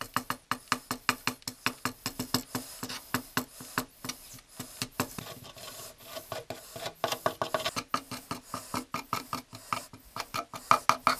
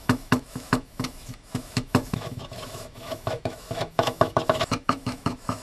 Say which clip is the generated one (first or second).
second